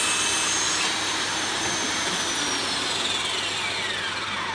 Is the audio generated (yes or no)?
no